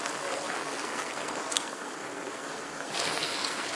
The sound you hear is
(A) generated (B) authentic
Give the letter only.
A